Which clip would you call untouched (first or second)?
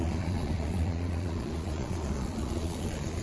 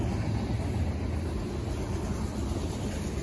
second